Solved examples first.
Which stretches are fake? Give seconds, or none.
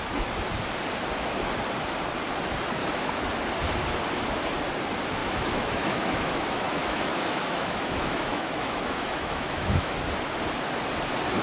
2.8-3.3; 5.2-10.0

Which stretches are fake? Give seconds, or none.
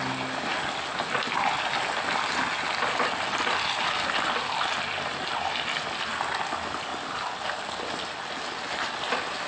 none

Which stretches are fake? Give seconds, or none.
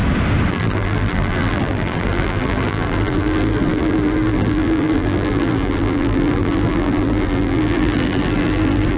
0.5-9.0